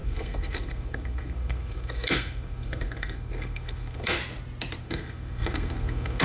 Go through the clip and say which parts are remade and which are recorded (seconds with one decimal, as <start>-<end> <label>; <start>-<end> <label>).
0.0-4.2 remade; 4.2-4.8 recorded; 4.8-6.2 remade